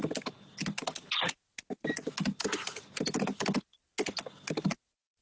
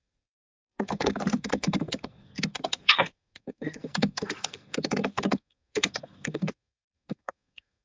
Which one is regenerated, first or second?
second